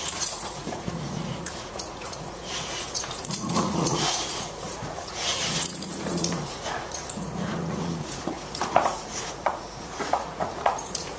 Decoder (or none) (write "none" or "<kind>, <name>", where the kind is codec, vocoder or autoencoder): vocoder, Vocos